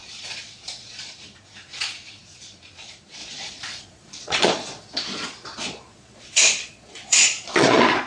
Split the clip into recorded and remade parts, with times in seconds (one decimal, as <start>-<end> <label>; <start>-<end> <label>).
0.0-8.1 remade